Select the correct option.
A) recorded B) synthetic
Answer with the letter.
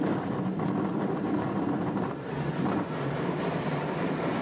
A